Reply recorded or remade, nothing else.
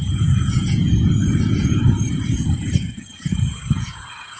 remade